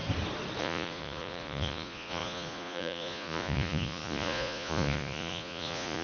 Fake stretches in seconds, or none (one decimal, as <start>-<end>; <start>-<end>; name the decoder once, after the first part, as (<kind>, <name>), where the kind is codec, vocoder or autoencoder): 0.6-6.0 (vocoder, Vocos)